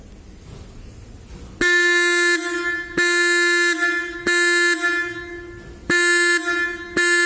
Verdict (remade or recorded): recorded